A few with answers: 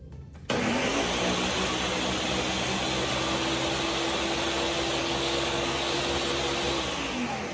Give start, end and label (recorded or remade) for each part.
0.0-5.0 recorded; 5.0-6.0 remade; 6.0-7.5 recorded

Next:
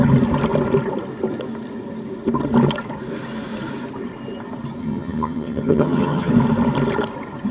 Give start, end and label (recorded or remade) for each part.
0.0-4.8 recorded; 4.8-6.3 remade; 6.3-7.5 recorded